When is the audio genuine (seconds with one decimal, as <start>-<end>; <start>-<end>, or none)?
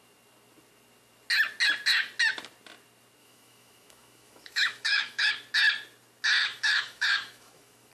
0.0-3.2; 5.3-6.4